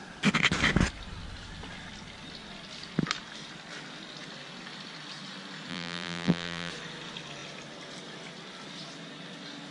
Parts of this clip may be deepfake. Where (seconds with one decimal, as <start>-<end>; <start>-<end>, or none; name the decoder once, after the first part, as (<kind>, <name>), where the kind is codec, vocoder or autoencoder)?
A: 5.7-6.7 (vocoder, BigVGAN v2)